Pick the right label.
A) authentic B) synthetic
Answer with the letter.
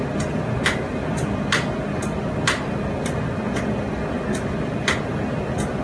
A